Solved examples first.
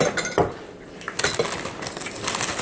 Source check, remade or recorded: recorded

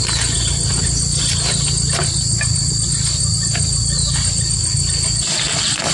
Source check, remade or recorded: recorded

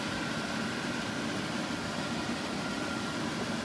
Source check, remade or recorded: remade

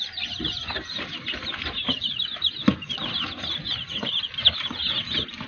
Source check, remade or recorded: recorded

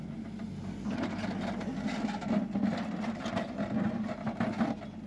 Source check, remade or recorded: recorded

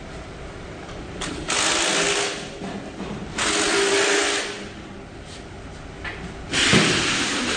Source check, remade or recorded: recorded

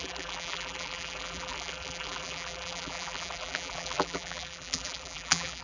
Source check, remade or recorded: remade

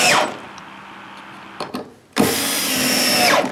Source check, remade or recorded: recorded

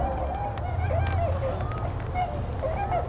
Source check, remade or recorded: recorded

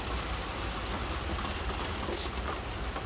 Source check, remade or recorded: recorded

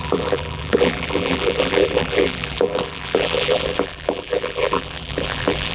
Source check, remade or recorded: remade